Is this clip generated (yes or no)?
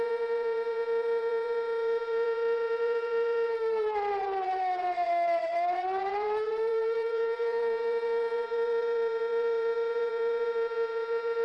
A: yes